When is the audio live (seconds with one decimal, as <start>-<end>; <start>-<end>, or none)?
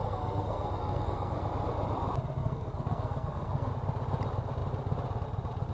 1.4-2.4; 3.7-5.7